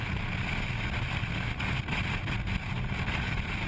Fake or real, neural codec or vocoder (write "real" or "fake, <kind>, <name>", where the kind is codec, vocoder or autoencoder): real